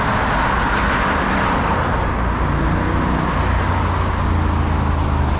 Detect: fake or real real